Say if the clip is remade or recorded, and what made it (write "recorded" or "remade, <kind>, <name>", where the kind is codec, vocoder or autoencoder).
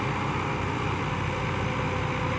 recorded